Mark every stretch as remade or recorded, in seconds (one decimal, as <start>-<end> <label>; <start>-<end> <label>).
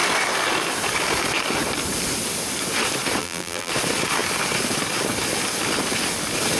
0.0-3.2 recorded; 3.2-3.7 remade; 3.7-6.6 recorded